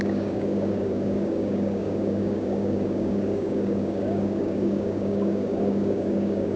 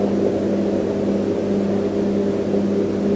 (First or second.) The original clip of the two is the second